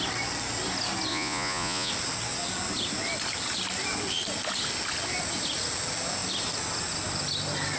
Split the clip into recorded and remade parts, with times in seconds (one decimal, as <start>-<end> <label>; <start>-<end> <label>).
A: 0.0-1.1 recorded; 1.1-1.9 remade; 1.9-7.8 recorded